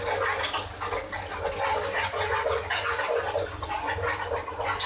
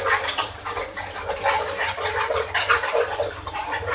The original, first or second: first